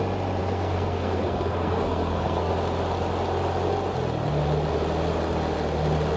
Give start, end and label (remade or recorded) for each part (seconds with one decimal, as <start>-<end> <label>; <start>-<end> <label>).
0.0-0.4 recorded; 0.4-2.5 remade; 2.5-6.2 recorded